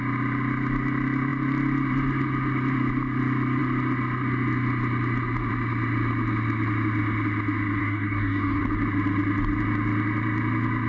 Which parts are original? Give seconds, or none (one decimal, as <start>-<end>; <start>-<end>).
0.0-7.8; 8.6-10.9